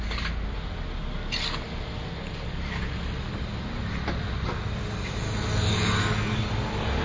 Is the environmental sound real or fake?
real